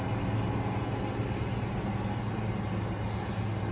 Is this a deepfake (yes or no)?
no